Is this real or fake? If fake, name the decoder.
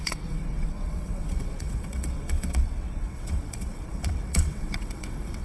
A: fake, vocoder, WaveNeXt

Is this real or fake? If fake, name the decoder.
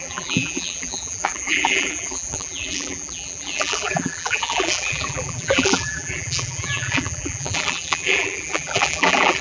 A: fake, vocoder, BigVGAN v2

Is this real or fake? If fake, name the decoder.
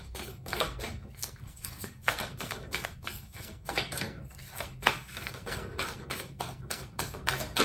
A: fake, codec, SNAC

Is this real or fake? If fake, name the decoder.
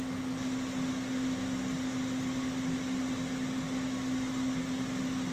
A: real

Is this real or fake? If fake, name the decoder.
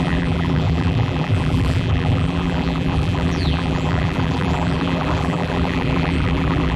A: fake, vocoder, BigVGAN v2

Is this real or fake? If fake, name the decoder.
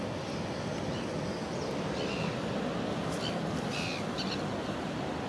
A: real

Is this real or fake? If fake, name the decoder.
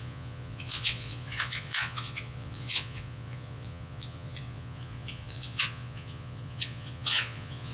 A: fake, vocoder, Vocos